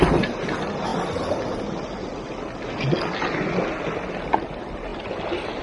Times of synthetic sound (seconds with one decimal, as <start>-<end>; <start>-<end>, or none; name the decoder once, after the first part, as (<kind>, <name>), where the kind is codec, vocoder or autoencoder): none